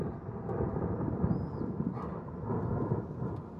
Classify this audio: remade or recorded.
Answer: recorded